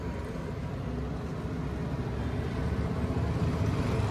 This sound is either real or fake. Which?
real